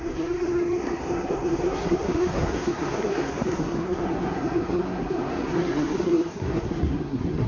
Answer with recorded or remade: remade